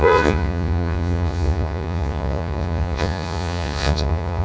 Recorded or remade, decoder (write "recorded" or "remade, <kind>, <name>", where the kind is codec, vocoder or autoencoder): remade, vocoder, Vocos